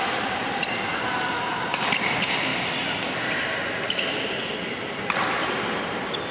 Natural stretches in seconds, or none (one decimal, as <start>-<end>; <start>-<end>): 0.0-6.3